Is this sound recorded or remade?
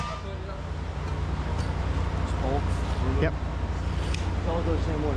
recorded